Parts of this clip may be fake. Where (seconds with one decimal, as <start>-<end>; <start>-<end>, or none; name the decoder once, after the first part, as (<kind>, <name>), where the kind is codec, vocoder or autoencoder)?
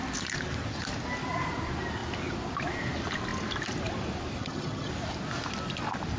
4.4-4.9 (vocoder, HiFi-GAN)